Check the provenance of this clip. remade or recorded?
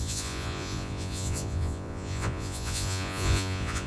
remade